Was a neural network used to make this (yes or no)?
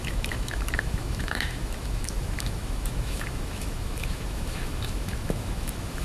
yes